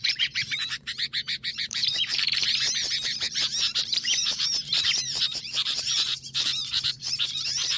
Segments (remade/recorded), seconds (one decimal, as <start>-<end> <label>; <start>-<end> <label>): 0.0-7.8 remade